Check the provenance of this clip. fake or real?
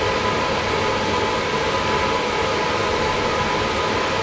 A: real